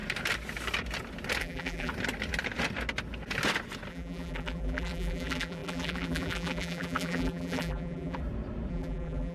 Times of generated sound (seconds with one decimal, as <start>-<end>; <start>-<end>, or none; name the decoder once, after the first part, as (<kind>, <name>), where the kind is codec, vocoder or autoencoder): 1.4-1.9 (vocoder, BigVGAN v2); 3.9-8.2; 8.7-9.3